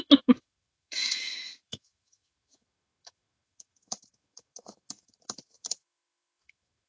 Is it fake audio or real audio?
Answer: fake